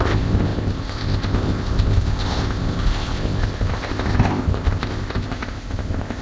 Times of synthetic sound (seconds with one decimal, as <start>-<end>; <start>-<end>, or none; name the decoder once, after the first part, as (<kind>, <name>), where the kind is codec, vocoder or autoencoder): 0.0-6.2 (codec, ZipCodec)

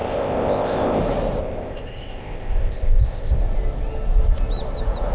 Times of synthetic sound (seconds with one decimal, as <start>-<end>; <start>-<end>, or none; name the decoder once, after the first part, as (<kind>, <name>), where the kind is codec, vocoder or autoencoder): 0.0-1.0 (codec, ZipCodec); 1.4-3.4

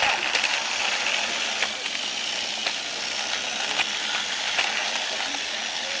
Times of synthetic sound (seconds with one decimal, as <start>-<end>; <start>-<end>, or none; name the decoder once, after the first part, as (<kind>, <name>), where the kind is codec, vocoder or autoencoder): none

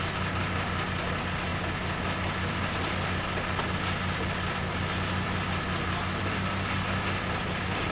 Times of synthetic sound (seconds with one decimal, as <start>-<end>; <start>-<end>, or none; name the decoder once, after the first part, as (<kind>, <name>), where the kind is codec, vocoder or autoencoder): none

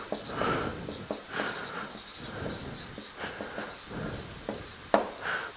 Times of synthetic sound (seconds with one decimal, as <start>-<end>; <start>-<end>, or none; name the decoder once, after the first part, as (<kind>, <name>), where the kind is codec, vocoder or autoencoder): none